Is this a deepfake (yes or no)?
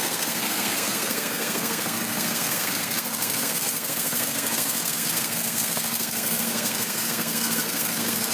yes